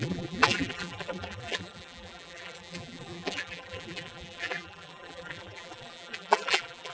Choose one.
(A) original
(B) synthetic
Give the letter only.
B